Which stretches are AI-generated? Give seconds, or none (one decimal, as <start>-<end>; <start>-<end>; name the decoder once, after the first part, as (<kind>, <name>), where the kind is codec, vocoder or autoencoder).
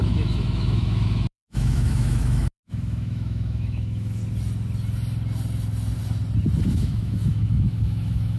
0.0-4.2 (autoencoder, DAC-VAE); 6.7-8.4